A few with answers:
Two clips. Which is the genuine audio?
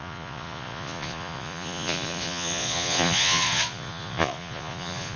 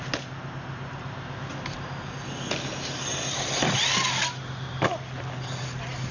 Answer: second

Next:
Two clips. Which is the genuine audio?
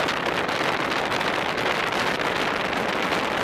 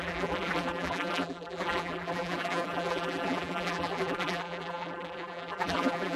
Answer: first